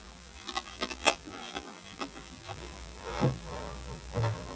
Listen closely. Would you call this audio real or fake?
fake